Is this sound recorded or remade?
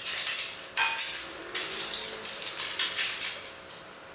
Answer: recorded